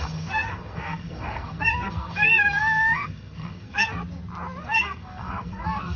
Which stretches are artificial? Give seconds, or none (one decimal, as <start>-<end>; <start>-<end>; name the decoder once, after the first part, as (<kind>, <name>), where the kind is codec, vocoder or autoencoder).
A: 0.0-4.0 (codec, SNAC); 4.6-6.0